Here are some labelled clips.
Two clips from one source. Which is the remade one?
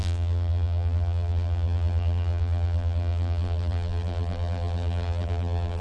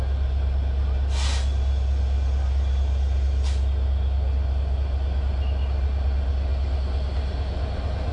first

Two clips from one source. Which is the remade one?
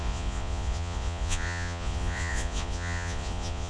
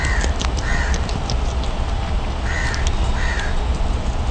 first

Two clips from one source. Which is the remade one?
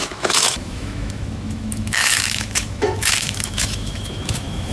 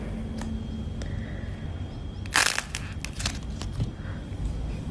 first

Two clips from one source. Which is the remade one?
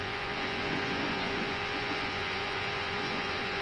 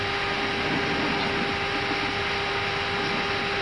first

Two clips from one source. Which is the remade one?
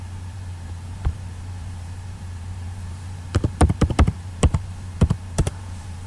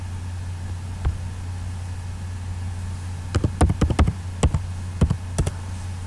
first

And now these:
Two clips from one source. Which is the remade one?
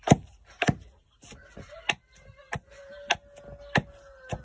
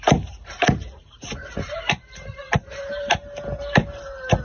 second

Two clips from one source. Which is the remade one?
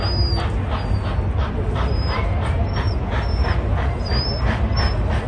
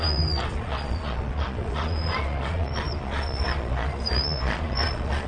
second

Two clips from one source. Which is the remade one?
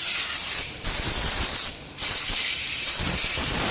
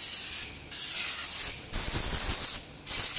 first